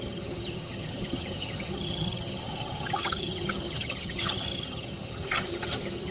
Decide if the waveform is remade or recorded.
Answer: remade